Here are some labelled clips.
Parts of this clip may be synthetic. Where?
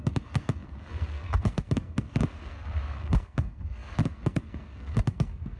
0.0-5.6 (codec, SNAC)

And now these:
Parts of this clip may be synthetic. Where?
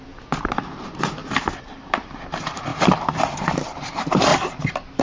0.0-4.3 (vocoder, BigVGAN v2)